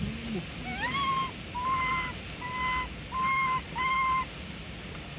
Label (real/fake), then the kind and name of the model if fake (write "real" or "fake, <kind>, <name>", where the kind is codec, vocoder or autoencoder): real